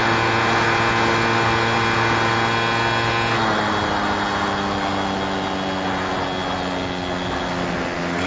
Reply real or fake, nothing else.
real